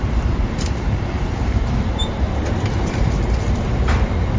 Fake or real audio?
fake